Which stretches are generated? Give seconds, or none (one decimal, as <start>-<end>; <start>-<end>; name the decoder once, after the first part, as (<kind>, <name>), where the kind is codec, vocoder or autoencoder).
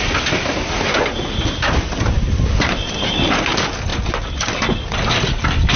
none